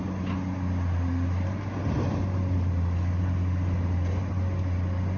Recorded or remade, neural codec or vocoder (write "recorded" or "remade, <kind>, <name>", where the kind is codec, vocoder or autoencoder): recorded